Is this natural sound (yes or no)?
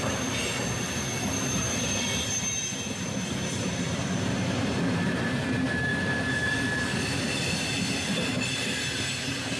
no